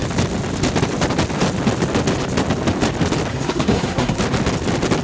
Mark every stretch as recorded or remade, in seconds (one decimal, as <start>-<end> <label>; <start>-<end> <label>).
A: 0.0-3.3 recorded; 3.3-4.2 remade; 4.2-5.0 recorded